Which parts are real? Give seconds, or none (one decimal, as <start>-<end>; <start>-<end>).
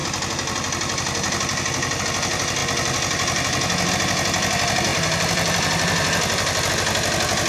0.0-4.9; 6.7-7.5